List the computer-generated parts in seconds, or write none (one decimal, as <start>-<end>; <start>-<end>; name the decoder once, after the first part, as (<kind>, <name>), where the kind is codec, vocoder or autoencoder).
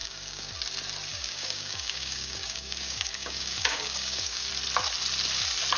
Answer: 0.0-0.5 (codec, DAC); 1.1-4.5